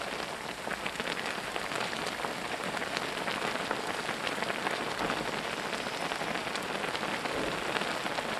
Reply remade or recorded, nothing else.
recorded